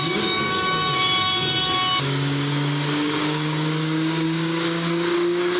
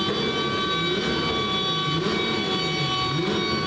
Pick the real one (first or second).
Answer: second